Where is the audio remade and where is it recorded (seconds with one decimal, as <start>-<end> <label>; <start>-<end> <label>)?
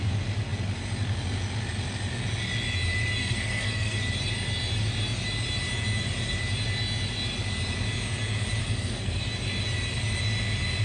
0.0-3.2 recorded; 3.2-4.0 remade; 4.0-8.6 recorded; 8.6-9.2 remade; 9.2-10.8 recorded